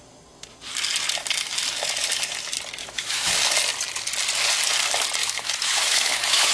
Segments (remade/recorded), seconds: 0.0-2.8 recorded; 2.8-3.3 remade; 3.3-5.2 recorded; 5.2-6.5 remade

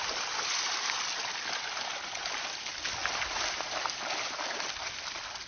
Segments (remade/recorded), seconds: 0.0-5.5 recorded

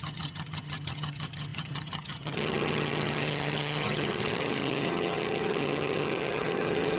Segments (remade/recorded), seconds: 0.0-7.0 remade